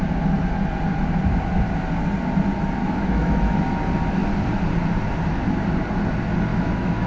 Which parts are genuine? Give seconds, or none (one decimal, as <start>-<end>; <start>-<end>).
0.0-2.8; 3.6-6.5